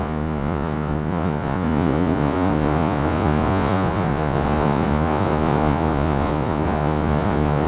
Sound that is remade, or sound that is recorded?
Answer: remade